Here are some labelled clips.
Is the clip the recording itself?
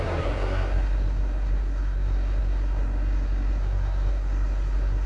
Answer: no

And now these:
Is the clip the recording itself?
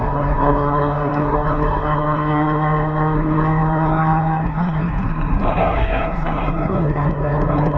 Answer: no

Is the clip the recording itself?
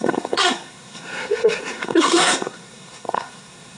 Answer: no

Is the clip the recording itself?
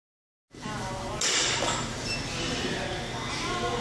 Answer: yes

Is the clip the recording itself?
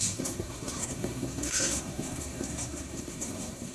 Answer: no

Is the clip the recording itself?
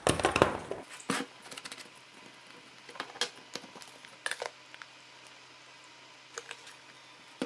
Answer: yes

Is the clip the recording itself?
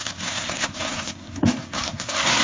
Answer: no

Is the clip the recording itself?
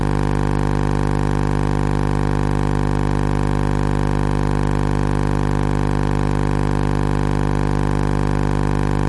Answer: yes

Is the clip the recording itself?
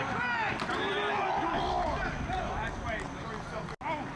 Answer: yes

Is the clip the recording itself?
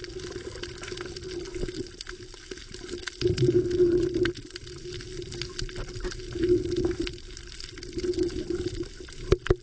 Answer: yes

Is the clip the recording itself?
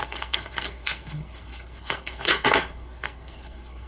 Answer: no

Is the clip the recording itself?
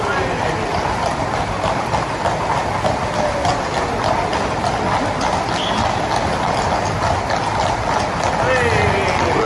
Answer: yes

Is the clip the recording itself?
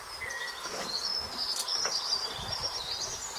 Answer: yes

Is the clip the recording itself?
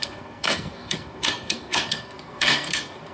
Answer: no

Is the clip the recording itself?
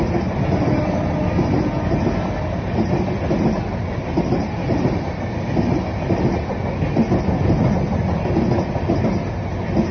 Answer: yes